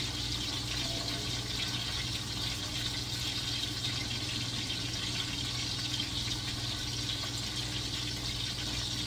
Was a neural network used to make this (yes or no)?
no